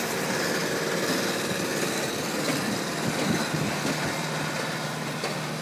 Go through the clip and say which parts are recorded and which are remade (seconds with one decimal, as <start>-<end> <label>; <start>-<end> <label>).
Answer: 0.0-5.6 recorded